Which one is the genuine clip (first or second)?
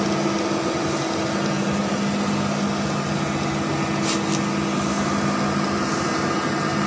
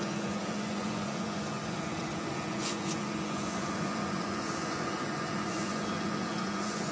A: first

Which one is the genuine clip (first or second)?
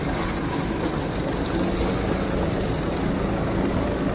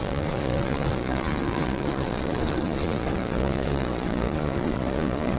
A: first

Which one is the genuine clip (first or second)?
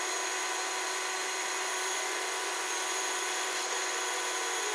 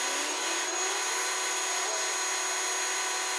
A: second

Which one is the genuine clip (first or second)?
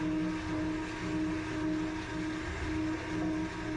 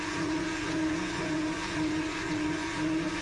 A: first